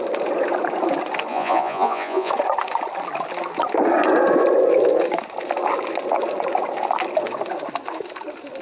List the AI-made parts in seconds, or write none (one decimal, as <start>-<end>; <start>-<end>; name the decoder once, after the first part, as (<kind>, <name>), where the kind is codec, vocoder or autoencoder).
1.3-2.3 (vocoder, Vocos)